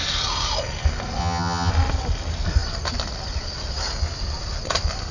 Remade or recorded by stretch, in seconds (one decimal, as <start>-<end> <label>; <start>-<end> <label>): 0.0-1.2 recorded; 1.2-1.7 remade; 1.7-5.1 recorded

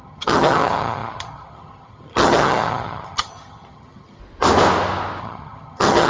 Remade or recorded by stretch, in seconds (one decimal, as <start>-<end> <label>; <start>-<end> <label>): 0.0-4.2 remade; 4.2-5.2 recorded; 5.2-6.1 remade